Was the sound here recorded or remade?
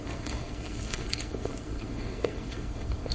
remade